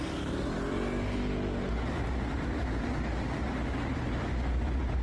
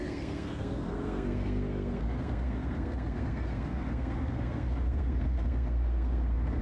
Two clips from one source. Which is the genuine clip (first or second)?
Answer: first